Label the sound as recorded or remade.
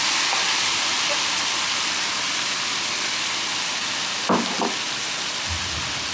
recorded